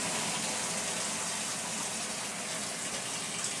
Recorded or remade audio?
recorded